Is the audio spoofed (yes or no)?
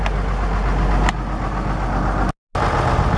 no